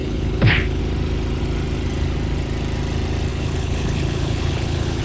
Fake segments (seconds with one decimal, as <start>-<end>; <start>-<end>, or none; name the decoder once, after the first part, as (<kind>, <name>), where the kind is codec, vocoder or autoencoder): 0.0-0.8 (codec, HILCodec); 3.3-5.0